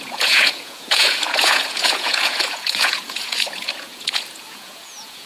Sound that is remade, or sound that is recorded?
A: remade